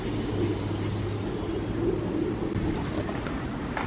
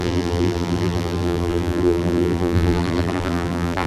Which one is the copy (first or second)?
second